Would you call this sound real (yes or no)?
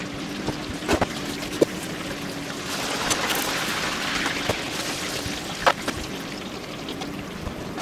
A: yes